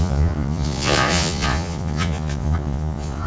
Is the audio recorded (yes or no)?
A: no